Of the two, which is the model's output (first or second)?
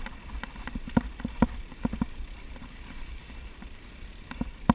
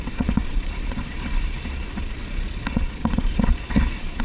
second